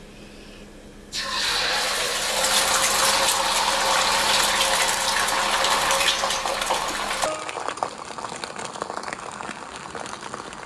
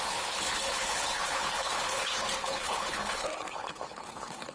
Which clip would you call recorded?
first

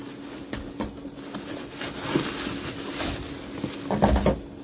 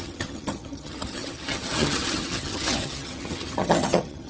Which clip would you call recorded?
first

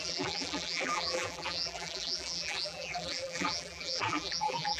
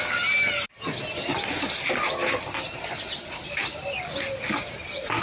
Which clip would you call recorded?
second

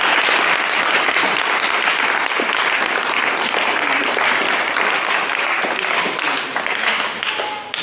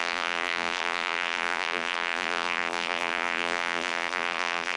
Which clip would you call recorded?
first